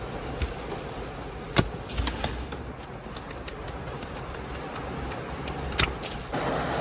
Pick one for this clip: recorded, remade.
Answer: recorded